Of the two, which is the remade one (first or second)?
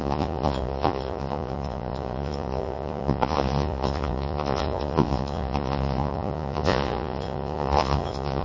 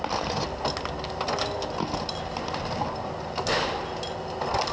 first